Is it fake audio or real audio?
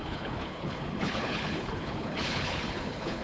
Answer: fake